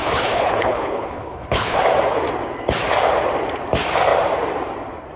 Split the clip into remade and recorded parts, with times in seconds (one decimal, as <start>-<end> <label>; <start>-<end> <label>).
0.0-1.8 remade; 1.8-5.2 recorded